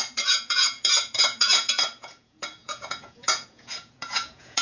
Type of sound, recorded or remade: remade